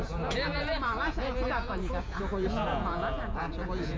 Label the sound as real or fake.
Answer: fake